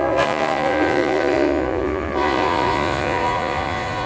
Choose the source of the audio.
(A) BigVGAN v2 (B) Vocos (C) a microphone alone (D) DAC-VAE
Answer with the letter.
B